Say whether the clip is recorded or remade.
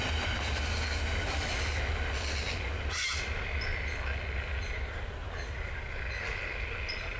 recorded